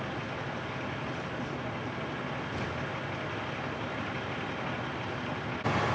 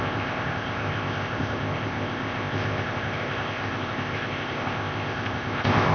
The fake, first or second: second